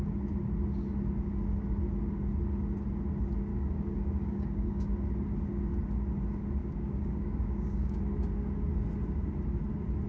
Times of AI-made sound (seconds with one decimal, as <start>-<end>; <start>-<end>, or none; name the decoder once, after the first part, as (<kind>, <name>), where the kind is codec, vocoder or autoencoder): 3.5-4.9 (codec, DAC); 6.6-8.0